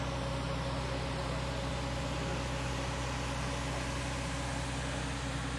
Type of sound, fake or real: real